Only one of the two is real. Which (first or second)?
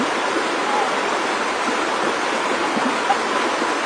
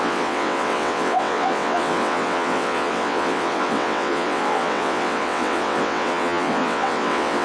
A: first